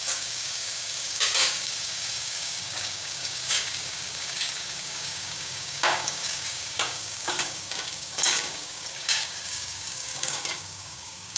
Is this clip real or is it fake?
fake